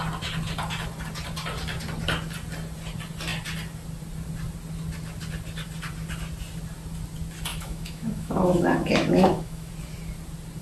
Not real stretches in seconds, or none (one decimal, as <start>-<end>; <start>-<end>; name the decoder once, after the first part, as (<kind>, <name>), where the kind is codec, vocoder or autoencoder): 7.5-9.7 (autoencoder, DAC-VAE)